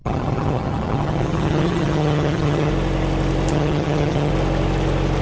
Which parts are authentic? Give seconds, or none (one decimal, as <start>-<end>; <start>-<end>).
2.7-3.5; 4.3-5.2